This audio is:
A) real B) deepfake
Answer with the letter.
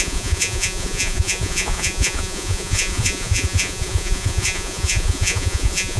B